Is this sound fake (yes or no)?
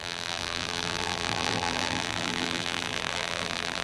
yes